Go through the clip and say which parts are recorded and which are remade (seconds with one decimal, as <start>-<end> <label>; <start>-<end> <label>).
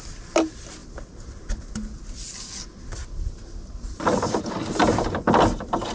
0.0-5.9 recorded